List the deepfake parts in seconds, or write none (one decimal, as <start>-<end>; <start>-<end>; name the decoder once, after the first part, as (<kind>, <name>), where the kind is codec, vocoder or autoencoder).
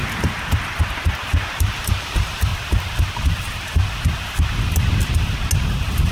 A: 1.6-2.5 (vocoder, BigVGAN v2)